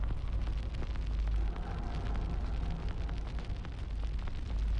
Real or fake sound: real